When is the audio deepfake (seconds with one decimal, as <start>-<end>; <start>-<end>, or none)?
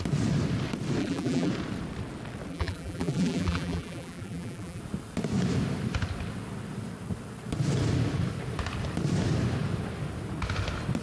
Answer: 1.0-1.5; 2.5-4.8